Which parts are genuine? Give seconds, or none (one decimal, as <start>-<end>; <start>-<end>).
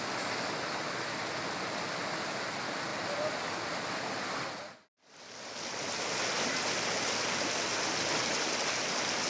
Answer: 0.0-9.3